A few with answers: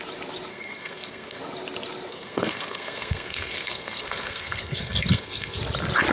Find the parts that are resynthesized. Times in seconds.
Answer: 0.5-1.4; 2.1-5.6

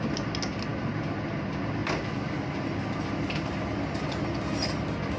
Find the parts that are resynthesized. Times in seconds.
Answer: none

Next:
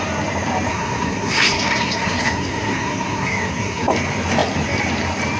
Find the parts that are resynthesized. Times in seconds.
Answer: 0.7-3.9

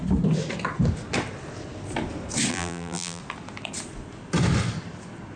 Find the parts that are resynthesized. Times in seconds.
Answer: 2.5-3.2

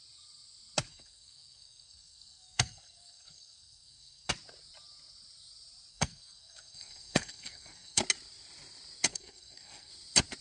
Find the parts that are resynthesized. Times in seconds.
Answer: 0.9-4.3; 5.9-8.0; 9.1-9.9

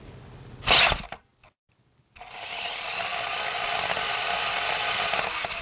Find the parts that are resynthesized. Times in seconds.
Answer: none

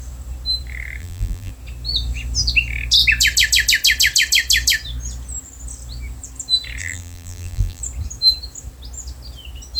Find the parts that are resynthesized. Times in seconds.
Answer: 1.0-1.5; 6.8-7.8

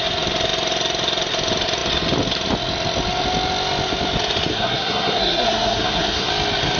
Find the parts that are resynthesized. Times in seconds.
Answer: 4.5-6.3